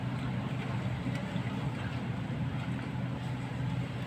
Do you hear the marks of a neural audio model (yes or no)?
no